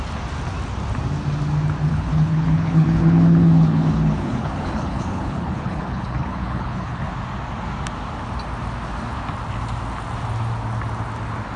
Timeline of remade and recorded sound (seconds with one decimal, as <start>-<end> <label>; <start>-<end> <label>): 0.0-1.9 recorded; 1.9-7.1 remade; 7.1-11.6 recorded